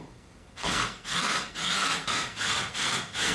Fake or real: fake